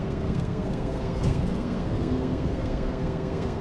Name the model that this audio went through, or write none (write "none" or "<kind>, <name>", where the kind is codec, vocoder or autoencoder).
codec, SNAC